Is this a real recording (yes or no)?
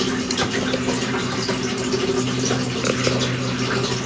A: yes